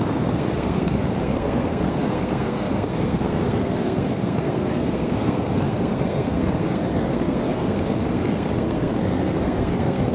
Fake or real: fake